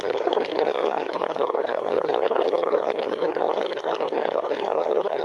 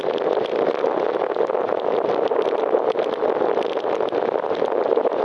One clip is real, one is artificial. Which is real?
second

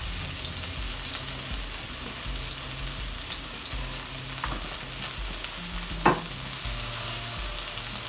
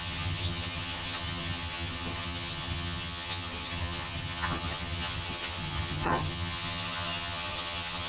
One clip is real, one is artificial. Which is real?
first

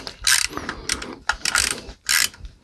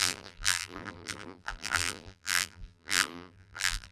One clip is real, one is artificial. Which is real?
first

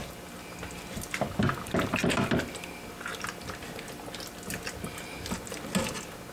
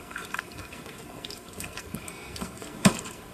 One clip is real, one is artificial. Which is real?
first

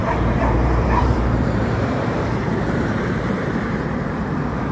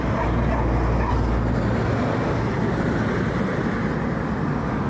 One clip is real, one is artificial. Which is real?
second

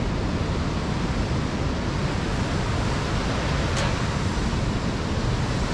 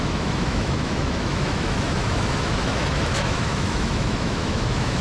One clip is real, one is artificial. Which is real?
first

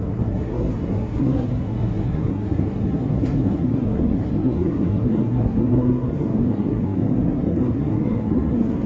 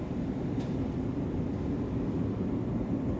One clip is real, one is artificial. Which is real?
second